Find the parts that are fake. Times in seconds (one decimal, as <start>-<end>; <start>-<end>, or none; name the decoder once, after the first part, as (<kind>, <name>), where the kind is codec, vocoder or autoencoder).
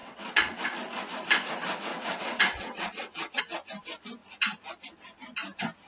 0.0-0.6 (vocoder, WaveNeXt); 1.9-3.4